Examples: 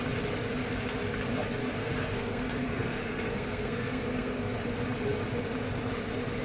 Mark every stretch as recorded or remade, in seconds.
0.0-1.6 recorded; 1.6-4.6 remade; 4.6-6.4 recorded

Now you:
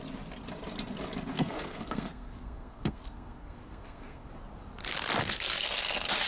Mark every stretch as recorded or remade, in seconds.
0.0-1.3 recorded; 1.3-4.3 remade; 4.3-6.3 recorded

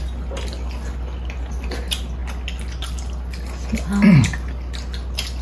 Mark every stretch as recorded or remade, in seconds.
0.0-5.4 recorded

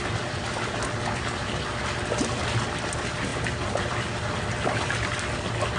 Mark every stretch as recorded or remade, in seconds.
0.0-5.8 recorded